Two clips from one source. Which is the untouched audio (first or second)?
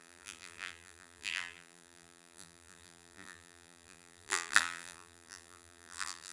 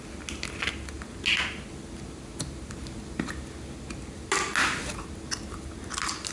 second